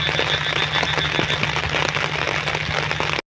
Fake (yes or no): no